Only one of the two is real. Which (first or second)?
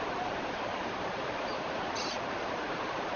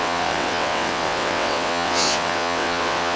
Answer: first